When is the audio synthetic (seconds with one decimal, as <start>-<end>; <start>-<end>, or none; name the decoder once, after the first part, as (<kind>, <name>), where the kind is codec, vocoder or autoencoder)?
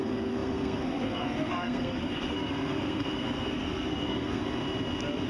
0.0-4.4 (codec, SNAC)